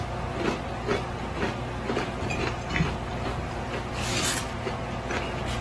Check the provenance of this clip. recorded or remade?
recorded